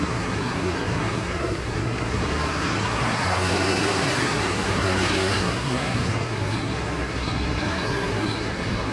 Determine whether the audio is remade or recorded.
remade